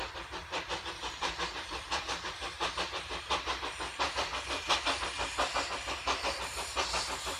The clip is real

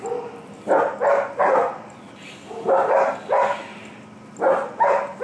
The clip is real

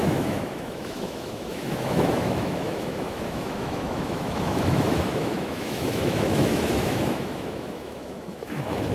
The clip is fake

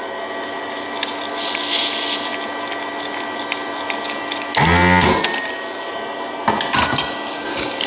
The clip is real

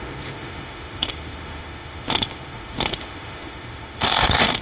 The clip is fake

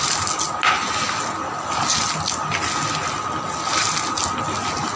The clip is real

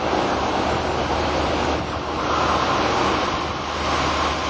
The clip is fake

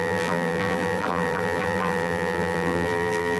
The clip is fake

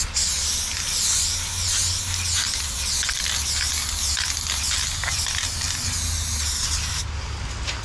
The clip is real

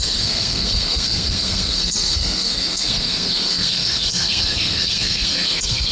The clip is fake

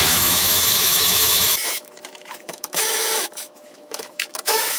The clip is fake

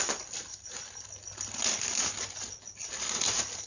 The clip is real